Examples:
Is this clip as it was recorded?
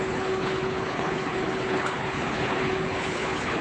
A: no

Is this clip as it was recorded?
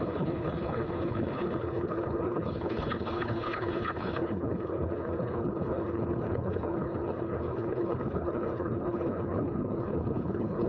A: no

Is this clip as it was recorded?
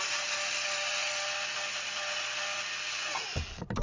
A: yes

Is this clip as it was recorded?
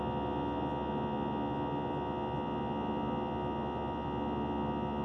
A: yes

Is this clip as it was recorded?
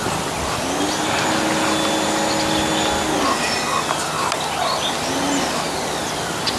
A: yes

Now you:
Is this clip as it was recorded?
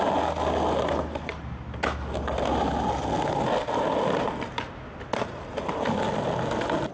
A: yes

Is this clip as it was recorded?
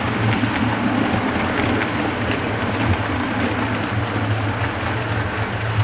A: yes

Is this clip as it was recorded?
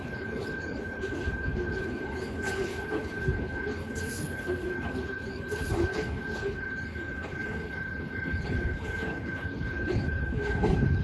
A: no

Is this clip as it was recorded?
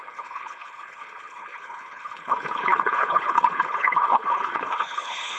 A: no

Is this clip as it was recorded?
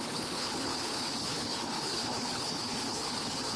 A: no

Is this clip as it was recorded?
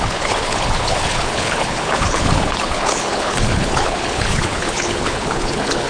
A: no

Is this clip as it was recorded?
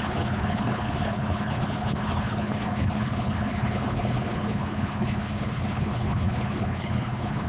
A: no